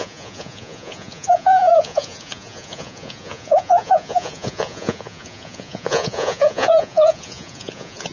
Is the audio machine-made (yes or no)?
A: yes